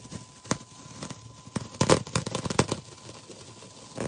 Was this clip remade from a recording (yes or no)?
no